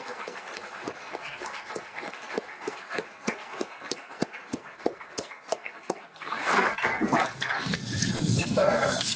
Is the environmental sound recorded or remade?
remade